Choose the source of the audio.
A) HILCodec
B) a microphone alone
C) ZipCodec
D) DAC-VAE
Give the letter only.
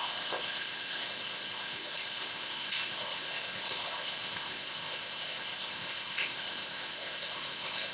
C